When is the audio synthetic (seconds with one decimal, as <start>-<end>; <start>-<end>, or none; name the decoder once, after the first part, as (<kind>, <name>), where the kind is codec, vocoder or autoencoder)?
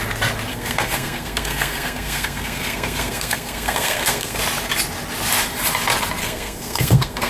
0.5-4.4 (codec, SNAC); 6.2-7.3